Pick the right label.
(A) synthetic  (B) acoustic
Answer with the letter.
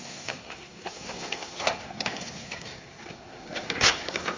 A